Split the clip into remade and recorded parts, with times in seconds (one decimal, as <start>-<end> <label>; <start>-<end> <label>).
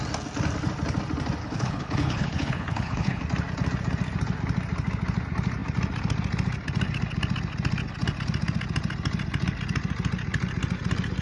0.0-1.4 recorded; 1.4-3.2 remade; 3.2-11.2 recorded